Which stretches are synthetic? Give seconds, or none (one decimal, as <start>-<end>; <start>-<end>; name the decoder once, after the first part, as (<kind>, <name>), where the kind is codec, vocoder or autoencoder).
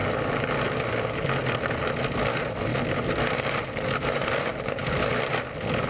none